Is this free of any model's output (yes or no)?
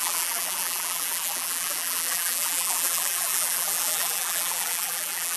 no